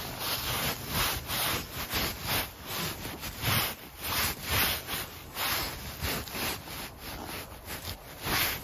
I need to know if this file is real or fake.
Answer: real